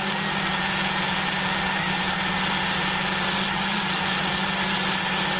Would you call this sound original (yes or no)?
yes